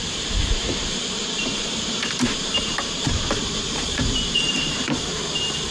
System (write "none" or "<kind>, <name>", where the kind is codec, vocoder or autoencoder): vocoder, BigVGAN v2